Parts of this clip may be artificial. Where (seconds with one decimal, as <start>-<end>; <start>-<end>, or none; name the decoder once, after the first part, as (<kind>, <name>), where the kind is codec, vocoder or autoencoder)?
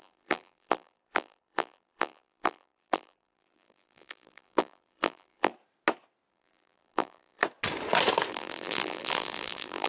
0.0-5.5 (vocoder, BigVGAN v2); 6.3-7.4; 8.3-9.9